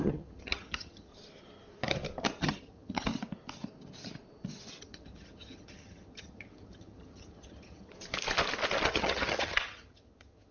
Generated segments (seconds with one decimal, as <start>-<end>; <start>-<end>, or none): 0.0-1.1; 2.4-3.1; 4.8-7.9; 8.9-10.5